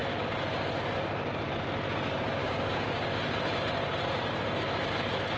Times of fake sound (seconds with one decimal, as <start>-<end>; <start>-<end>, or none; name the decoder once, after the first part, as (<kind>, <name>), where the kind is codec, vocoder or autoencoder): 2.4-3.2 (codec, DAC)